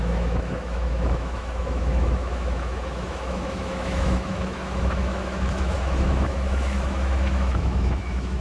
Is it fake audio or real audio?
fake